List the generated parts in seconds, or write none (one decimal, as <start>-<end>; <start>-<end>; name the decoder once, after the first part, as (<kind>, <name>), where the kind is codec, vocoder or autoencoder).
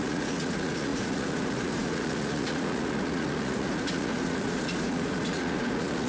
0.0-6.1 (vocoder, Vocos)